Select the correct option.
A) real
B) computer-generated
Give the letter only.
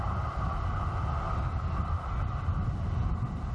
A